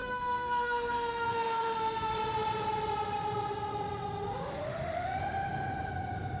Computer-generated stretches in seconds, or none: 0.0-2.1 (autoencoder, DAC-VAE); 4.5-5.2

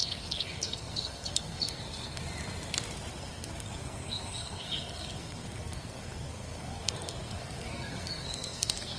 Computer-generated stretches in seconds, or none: 0.0-2.2 (codec, SNAC); 3.1-9.0